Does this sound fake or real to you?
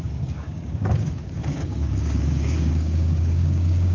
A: fake